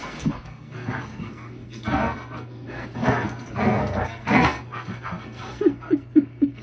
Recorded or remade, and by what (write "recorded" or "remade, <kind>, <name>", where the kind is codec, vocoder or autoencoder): remade, codec, SNAC